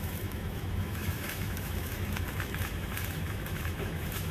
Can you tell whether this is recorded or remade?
remade